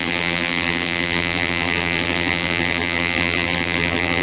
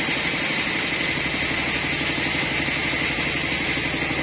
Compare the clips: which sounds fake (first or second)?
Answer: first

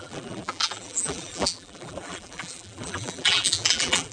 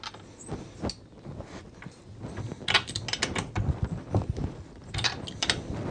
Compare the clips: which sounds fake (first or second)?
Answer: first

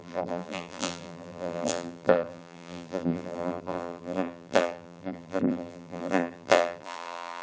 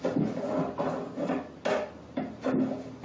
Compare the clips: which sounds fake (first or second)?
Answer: first